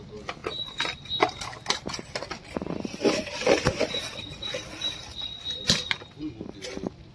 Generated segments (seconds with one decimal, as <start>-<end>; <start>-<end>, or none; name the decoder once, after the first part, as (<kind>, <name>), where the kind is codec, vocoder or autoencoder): none